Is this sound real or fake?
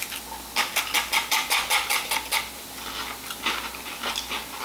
real